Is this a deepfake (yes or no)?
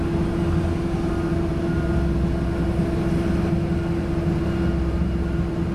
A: no